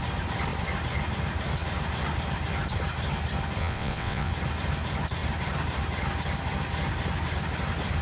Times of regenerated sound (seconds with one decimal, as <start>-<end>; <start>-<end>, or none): 3.6-4.3